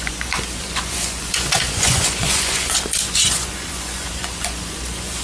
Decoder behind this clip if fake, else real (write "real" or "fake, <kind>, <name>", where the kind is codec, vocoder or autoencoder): fake, vocoder, Vocos